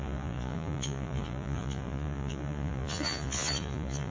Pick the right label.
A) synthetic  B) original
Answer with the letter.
A